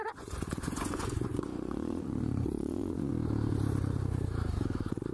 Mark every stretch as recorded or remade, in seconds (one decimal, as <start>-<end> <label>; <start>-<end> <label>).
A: 0.0-3.1 remade; 3.1-5.1 recorded